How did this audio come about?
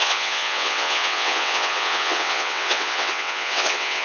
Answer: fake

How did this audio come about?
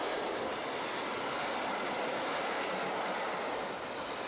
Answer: real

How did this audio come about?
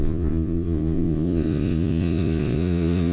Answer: fake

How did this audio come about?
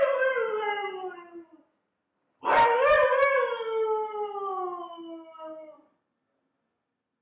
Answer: real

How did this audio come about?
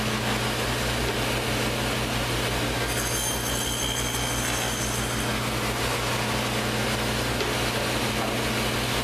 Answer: real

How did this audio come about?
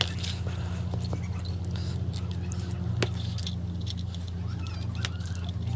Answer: real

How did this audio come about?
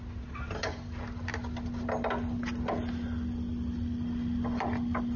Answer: real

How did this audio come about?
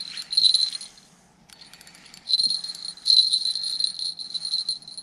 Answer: real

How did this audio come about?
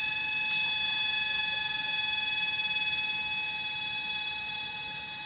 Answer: real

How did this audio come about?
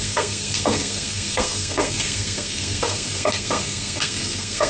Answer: fake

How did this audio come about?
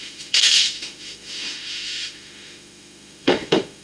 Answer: fake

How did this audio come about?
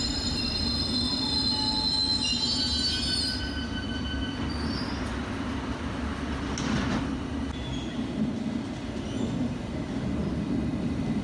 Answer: real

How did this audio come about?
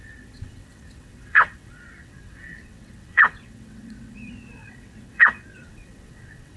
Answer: fake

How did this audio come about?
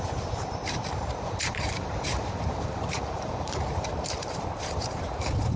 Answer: fake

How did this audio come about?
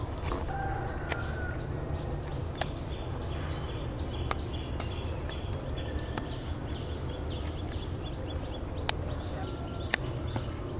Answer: real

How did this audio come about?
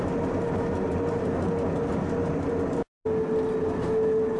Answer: real